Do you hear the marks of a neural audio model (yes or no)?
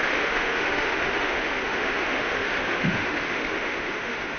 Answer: yes